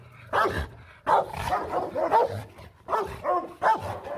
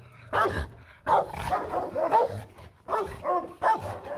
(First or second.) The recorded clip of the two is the first